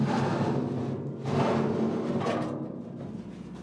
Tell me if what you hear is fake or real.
real